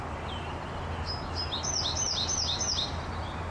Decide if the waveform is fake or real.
real